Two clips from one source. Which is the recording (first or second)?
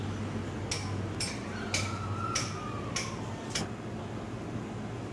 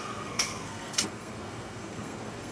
first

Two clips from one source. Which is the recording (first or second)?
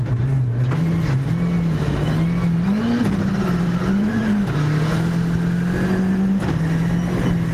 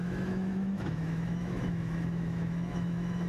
first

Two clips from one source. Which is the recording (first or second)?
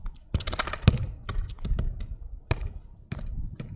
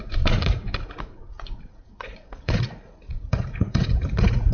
first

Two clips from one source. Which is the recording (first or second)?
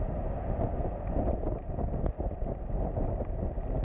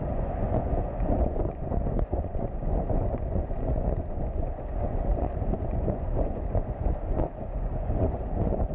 first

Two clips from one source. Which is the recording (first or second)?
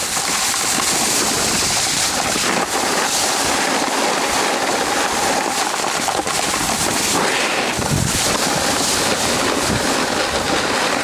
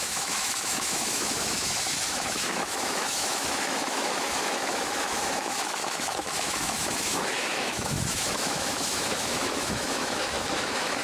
first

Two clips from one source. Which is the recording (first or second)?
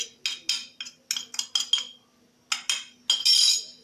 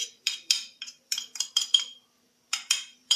first